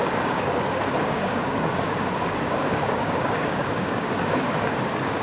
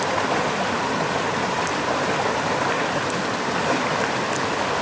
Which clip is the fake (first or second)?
first